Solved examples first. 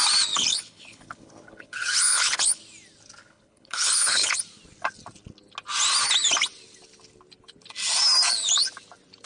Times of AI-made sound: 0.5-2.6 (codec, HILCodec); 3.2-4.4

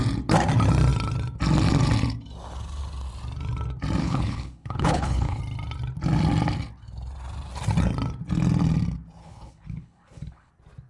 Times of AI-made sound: 4.0-5.4 (codec, HILCodec); 9.2-10.5

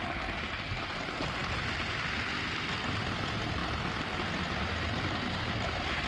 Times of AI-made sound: none